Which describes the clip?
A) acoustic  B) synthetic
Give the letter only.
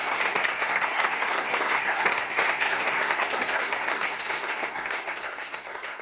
B